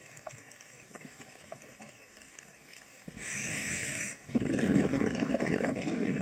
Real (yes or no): no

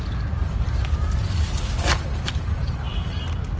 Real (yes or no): yes